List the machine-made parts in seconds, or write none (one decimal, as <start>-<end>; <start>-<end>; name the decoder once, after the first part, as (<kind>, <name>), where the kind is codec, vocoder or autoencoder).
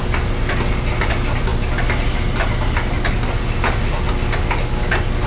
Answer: none